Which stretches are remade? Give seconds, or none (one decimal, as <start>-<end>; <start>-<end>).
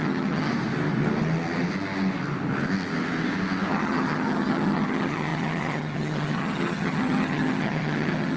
0.0-0.5; 3.7-8.4